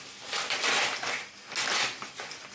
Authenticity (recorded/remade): recorded